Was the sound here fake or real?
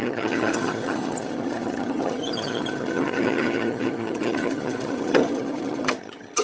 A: fake